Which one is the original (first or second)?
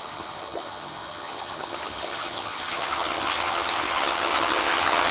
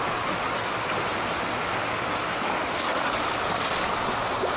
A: second